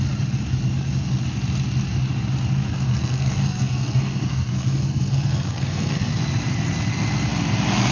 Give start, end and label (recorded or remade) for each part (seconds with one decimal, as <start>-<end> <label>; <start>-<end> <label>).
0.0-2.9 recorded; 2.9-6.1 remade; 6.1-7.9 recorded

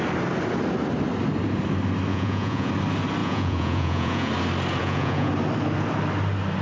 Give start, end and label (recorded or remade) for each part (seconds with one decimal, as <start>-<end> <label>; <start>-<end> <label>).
0.0-2.1 recorded; 2.1-2.7 remade; 2.7-3.2 recorded; 3.2-4.3 remade; 4.3-4.8 recorded; 4.8-5.3 remade; 5.3-6.6 recorded

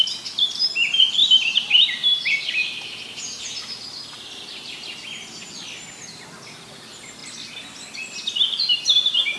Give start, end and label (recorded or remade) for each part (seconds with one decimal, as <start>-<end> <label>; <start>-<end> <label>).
0.0-9.4 recorded

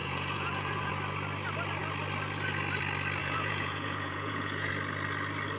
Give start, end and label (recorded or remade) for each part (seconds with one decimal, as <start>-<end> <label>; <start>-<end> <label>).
0.0-0.9 remade; 0.9-3.2 recorded; 3.2-4.7 remade; 4.7-5.6 recorded

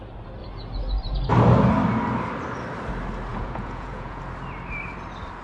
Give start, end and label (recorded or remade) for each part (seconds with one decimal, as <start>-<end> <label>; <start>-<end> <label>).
0.0-3.3 recorded; 3.3-4.2 remade; 4.2-5.4 recorded